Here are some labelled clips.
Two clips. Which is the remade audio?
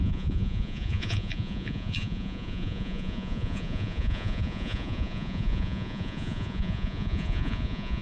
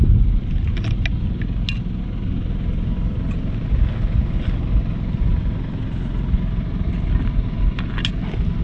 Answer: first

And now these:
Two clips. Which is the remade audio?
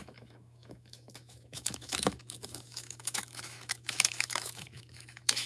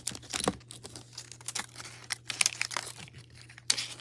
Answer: first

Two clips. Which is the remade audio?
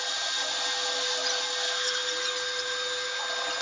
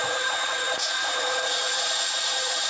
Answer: second